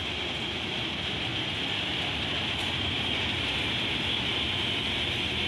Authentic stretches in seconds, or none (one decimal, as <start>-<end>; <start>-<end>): 0.0-5.5